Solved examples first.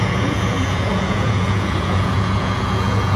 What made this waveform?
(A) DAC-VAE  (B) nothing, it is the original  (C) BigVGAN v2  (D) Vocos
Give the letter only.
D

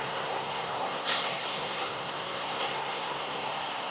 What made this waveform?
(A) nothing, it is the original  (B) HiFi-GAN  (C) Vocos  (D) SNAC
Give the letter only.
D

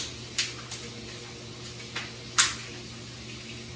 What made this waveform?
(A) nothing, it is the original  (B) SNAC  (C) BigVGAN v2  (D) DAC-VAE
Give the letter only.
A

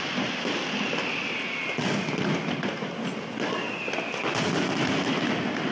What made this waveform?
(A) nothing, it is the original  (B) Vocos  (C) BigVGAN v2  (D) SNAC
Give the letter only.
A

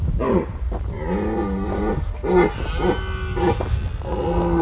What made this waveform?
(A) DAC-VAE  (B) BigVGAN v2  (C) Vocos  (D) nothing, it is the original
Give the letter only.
D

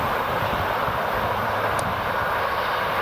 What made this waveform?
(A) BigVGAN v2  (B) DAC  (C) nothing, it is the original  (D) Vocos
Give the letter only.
A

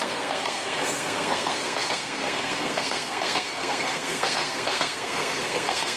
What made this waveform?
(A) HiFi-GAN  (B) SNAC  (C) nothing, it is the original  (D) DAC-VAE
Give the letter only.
B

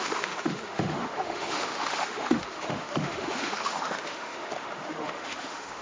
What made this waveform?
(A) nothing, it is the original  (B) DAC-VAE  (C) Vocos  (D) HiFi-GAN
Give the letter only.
B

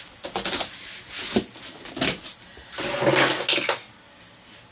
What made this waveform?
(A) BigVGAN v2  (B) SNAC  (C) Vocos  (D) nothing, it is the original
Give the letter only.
D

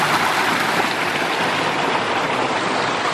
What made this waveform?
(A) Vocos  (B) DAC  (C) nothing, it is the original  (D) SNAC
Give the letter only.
C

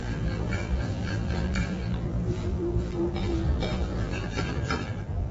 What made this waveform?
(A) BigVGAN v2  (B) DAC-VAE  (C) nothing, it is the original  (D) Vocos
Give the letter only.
A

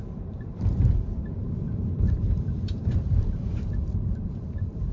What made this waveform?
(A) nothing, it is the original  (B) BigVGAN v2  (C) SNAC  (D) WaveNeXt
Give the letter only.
B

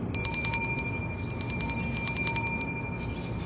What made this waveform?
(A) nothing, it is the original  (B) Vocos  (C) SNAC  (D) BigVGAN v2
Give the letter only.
A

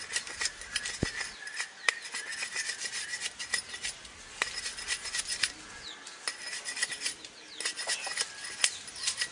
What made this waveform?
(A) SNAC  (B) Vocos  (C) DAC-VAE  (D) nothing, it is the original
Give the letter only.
D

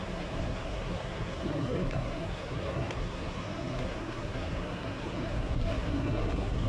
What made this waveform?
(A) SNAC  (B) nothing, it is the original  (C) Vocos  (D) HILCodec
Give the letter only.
A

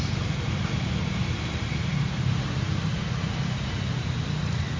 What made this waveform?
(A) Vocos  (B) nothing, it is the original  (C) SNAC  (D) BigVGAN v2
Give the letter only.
B